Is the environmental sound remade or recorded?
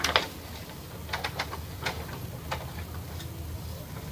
recorded